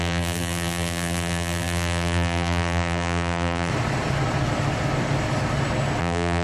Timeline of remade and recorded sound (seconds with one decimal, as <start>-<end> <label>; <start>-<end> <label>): 0.0-3.7 remade; 3.7-6.0 recorded; 6.0-6.4 remade